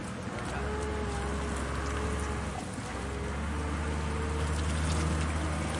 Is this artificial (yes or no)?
no